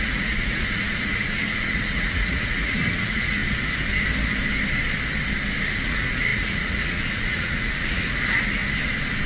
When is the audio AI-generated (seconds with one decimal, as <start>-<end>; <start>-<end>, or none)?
0.0-3.4; 5.6-8.6